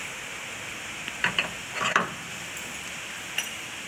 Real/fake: real